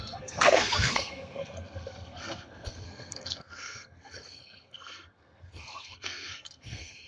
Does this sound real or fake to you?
fake